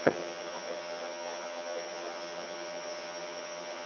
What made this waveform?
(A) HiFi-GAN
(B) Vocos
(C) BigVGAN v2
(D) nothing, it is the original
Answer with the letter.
A